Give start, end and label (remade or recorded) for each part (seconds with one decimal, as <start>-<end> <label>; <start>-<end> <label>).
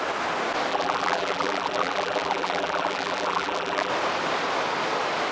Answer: 0.0-0.7 recorded; 0.7-3.9 remade; 3.9-5.3 recorded